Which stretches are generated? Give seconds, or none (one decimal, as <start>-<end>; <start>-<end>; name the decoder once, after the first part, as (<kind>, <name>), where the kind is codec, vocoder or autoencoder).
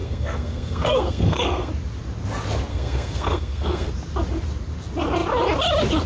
0.0-1.7 (codec, SNAC); 2.7-3.9